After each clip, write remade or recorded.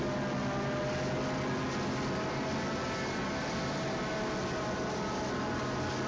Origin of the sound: recorded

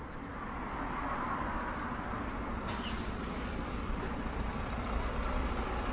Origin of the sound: recorded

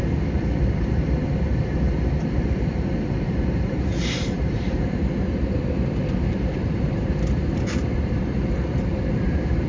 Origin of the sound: remade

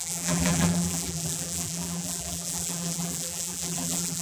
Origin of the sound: remade